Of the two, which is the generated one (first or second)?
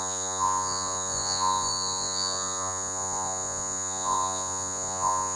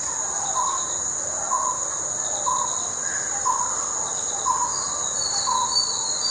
first